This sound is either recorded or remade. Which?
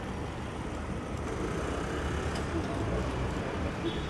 recorded